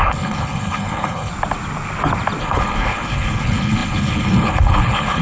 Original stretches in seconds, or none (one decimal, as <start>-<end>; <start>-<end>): 1.3-2.4